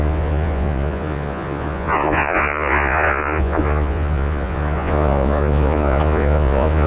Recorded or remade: remade